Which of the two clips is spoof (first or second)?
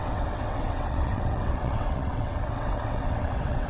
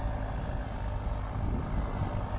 first